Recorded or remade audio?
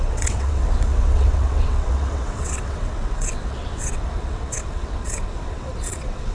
remade